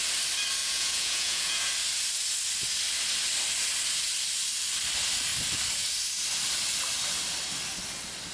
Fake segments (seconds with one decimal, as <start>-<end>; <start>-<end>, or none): 0.6-1.7